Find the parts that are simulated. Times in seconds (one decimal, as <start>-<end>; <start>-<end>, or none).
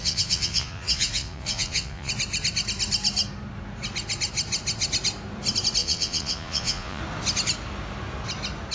0.0-2.1; 5.8-7.0